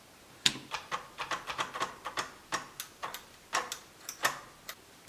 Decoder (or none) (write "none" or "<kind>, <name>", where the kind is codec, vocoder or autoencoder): none